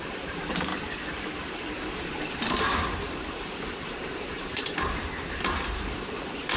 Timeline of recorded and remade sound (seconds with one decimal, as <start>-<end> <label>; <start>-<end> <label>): 0.0-0.7 remade; 0.7-2.5 recorded; 2.5-6.6 remade